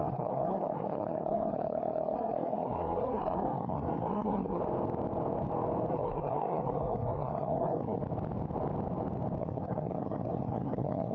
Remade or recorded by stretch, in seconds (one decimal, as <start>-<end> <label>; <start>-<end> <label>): 0.0-4.6 remade; 4.6-5.9 recorded; 5.9-8.0 remade; 8.0-9.4 recorded; 9.4-11.1 remade